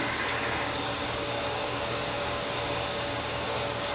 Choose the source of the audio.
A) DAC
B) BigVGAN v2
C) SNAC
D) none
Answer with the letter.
A